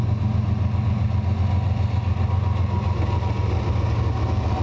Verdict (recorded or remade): recorded